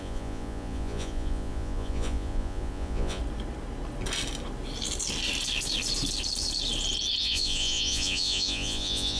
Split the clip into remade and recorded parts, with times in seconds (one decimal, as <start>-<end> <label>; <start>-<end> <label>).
0.0-3.2 remade; 3.2-7.2 recorded; 7.2-9.2 remade